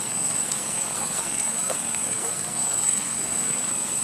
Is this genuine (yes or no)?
no